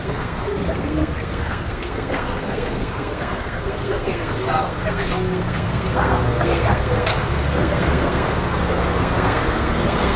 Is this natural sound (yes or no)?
no